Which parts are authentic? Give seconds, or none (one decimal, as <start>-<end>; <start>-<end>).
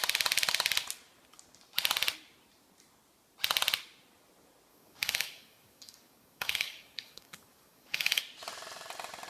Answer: 0.0-4.7; 8.2-9.3